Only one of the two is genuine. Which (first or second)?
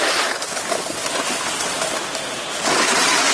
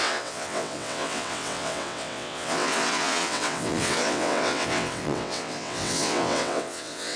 first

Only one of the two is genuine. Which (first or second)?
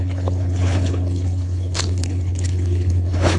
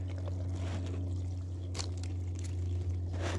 second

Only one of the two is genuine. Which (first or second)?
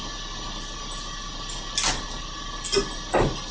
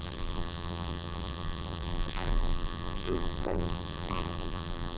first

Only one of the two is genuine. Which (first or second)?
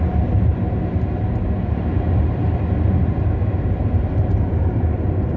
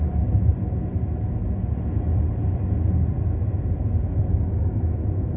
second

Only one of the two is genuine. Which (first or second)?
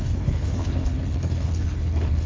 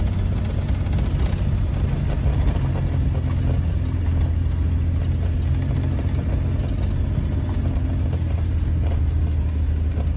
second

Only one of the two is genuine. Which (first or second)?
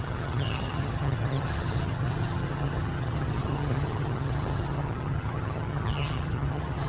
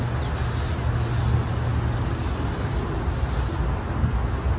second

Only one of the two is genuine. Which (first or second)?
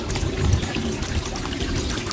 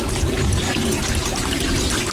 second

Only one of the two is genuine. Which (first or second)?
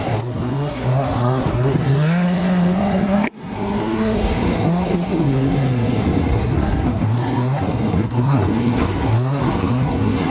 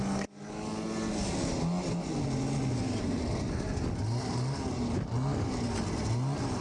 second